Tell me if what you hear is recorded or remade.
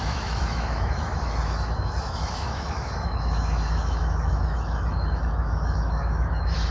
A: remade